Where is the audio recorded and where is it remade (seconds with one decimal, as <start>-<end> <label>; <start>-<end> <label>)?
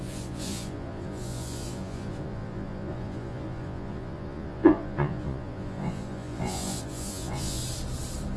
0.0-7.6 remade; 7.6-8.4 recorded